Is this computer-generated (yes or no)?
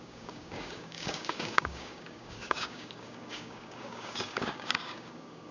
yes